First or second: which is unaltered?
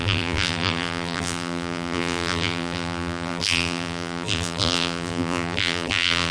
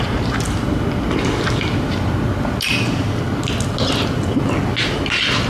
second